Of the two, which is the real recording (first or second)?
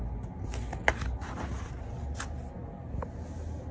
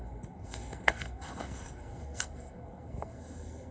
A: first